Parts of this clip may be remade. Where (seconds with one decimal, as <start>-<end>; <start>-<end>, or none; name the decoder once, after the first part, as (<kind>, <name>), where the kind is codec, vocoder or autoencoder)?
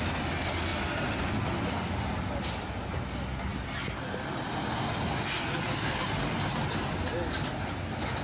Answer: none